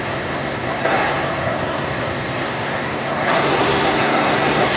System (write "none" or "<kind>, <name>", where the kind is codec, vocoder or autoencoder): codec, SNAC